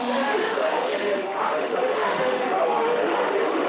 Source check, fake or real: fake